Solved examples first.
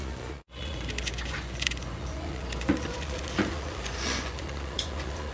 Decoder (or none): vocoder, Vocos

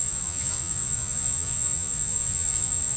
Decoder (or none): vocoder, Vocos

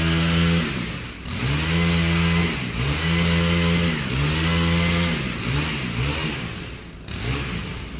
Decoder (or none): none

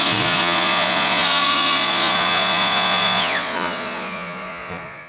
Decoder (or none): vocoder, Vocos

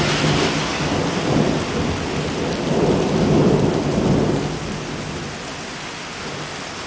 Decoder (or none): none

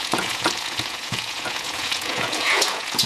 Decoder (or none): vocoder, Vocos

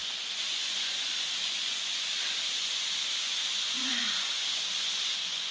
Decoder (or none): vocoder, Vocos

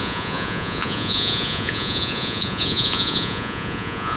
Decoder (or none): vocoder, Vocos